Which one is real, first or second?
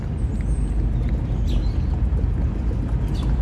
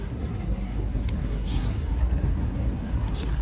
first